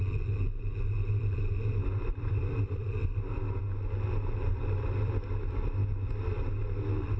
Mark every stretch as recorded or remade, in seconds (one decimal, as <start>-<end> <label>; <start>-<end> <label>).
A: 0.0-1.8 recorded; 1.8-3.6 remade; 3.6-4.5 recorded; 4.5-5.1 remade; 5.1-7.2 recorded